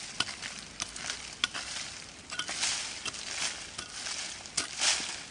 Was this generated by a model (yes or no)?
no